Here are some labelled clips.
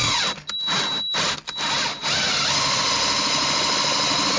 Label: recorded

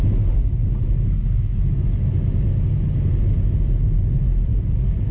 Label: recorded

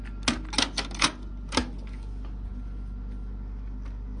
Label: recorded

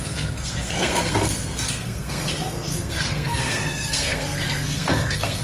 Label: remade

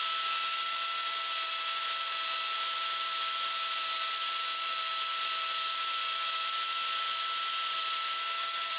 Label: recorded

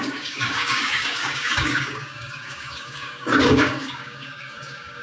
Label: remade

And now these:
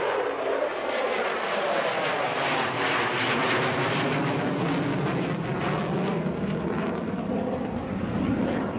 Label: recorded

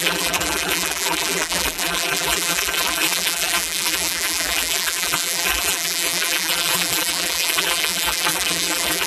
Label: remade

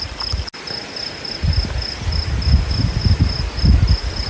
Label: recorded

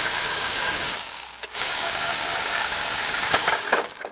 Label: remade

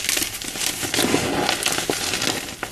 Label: recorded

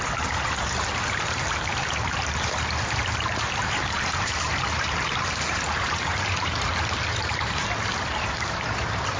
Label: remade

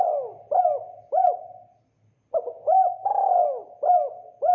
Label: recorded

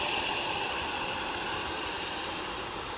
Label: recorded